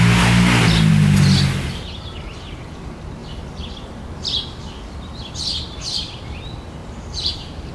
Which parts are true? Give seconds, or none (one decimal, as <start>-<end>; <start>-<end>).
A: 0.0-6.8